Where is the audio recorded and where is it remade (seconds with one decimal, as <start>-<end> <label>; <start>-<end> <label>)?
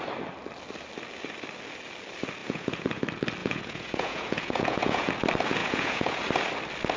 0.0-2.4 recorded; 2.4-3.0 remade; 3.0-3.4 recorded; 3.4-5.1 remade; 5.1-5.6 recorded; 5.6-6.2 remade; 6.2-7.0 recorded